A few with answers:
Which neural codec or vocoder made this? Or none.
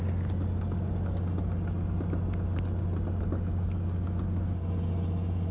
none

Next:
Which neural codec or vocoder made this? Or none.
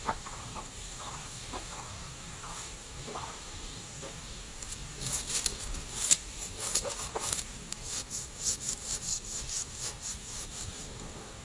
codec, DAC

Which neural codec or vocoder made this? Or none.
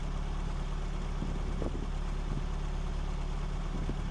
none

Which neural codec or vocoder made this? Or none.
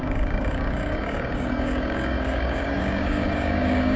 codec, DAC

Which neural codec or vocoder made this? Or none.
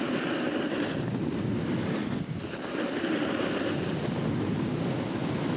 none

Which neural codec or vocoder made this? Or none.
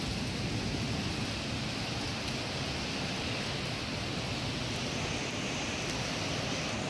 none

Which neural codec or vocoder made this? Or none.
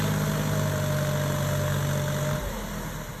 none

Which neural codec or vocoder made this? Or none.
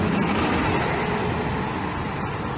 none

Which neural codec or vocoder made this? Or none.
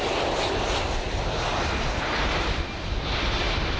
none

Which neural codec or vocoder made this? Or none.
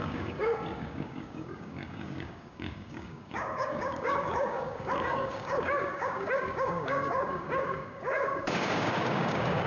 codec, DAC